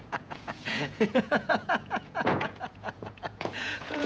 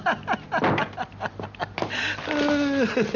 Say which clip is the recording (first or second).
second